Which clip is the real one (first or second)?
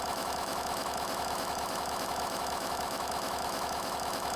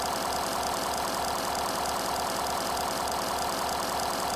second